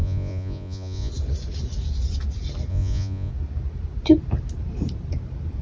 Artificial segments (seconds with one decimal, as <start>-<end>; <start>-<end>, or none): 0.0-1.1; 2.7-3.3